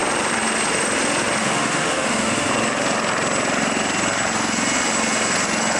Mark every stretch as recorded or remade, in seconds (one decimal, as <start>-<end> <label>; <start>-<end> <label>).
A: 0.0-1.4 recorded; 1.4-2.5 remade; 2.5-5.8 recorded